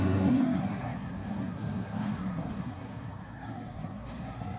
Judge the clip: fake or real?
fake